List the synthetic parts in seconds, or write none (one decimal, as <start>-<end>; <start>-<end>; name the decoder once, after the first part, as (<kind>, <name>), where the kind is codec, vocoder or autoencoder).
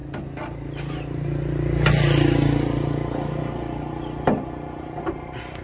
none